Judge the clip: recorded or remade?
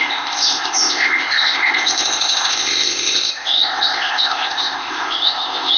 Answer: remade